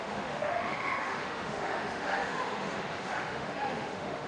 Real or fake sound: fake